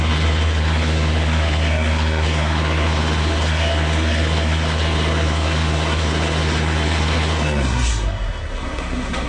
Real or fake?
fake